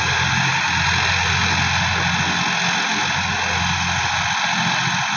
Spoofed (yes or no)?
no